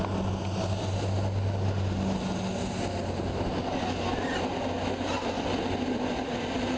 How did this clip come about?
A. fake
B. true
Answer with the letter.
B